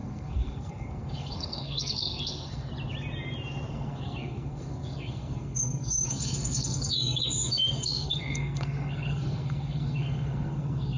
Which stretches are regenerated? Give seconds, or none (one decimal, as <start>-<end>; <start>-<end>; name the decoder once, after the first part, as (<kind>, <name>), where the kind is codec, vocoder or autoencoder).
0.0-2.7 (codec, SNAC); 3.7-11.0